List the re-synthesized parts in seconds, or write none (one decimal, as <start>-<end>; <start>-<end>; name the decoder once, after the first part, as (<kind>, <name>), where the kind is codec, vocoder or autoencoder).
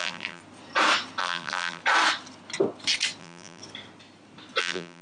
0.0-0.4 (vocoder, BigVGAN v2); 1.2-1.8; 3.2-3.6; 4.6-5.0